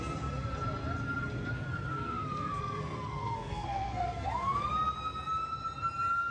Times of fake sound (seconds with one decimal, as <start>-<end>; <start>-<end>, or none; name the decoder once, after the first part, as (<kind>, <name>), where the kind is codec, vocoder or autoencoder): 1.9-4.7 (codec, SNAC)